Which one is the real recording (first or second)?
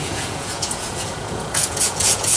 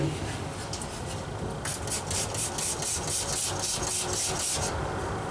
second